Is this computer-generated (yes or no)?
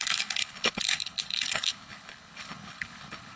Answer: yes